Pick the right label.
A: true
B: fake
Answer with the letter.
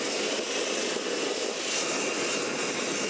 A